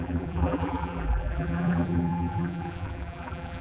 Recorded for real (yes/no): no